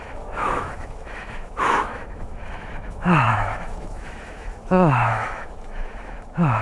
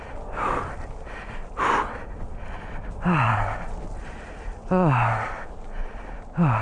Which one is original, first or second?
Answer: second